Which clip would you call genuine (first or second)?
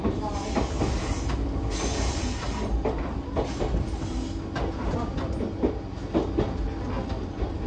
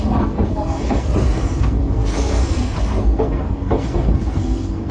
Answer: first